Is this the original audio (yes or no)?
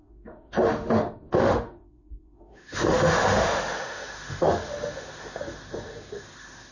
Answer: no